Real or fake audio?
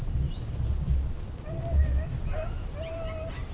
real